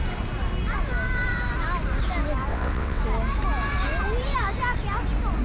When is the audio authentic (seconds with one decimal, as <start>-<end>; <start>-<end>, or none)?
0.0-2.5; 3.0-5.4